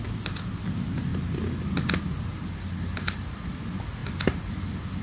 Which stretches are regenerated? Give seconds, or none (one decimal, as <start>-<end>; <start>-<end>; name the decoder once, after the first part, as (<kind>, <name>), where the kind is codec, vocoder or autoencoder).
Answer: 0.0-1.1 (vocoder, BigVGAN v2); 2.0-4.0; 4.5-5.0